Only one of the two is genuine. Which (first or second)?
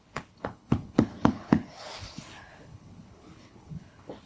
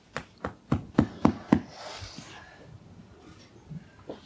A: second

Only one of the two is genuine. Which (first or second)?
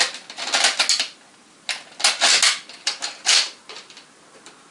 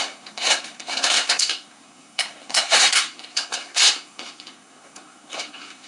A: first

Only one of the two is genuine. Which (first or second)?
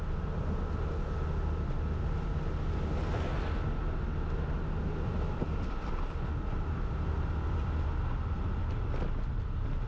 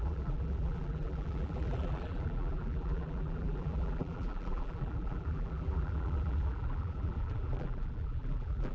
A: first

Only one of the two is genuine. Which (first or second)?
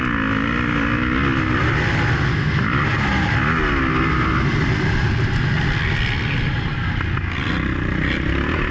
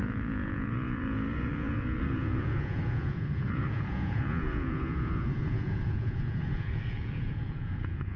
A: first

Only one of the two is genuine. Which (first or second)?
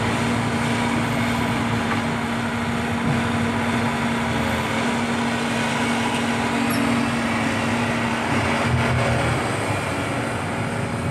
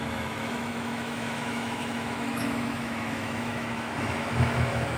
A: first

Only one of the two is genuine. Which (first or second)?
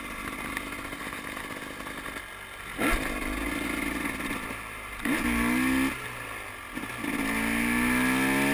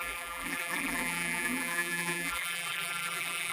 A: first